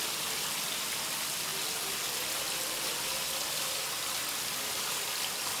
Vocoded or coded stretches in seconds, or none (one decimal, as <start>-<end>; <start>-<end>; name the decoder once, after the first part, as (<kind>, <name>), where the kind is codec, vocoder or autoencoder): none